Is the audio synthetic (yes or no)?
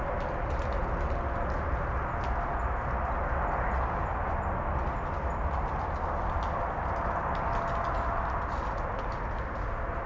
no